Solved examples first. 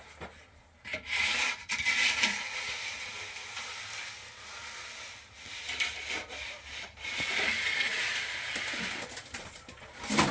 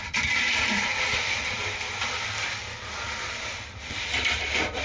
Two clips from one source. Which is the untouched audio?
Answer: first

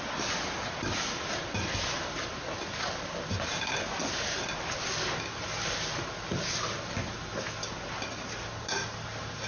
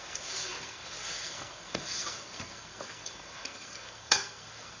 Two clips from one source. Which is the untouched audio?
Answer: first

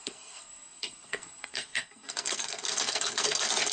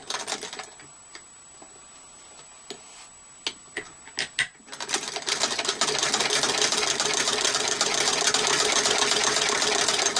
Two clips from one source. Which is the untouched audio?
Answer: second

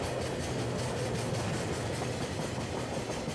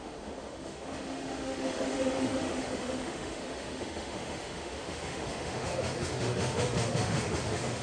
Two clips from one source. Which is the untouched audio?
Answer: first